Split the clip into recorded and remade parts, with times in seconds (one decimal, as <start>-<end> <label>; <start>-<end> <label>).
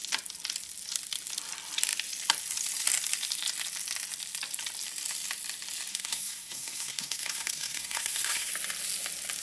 0.0-5.9 recorded; 5.9-8.5 remade; 8.5-9.4 recorded